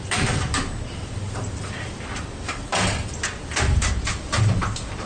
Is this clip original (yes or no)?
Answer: no